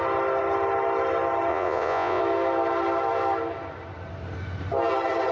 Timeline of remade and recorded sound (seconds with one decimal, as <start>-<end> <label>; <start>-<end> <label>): 0.0-1.5 recorded; 1.5-2.2 remade; 2.2-5.3 recorded